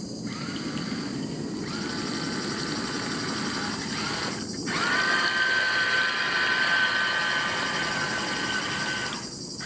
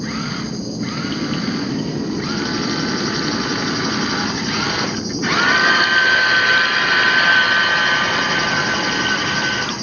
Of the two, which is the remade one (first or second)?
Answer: first